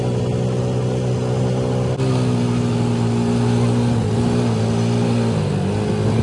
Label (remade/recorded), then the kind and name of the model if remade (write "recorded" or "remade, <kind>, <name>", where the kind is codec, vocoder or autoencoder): recorded